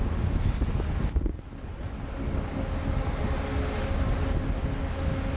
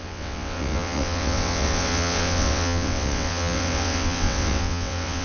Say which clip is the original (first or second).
first